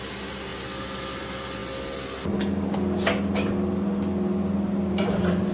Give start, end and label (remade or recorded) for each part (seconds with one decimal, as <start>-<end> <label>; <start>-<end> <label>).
0.0-5.5 recorded